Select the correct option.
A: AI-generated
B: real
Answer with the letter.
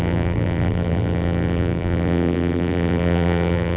A